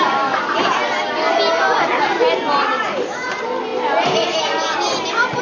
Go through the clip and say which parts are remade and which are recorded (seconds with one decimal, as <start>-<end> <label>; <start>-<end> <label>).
0.0-5.4 recorded